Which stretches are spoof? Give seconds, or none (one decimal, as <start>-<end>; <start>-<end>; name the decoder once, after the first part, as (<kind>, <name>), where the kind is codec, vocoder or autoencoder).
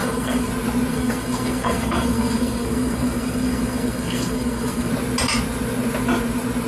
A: 0.0-0.5 (codec, SNAC); 0.9-4.9